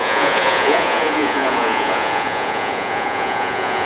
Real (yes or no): no